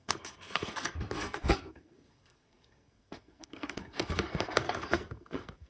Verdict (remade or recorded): remade